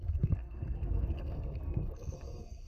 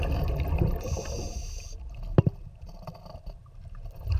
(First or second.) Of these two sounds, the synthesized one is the first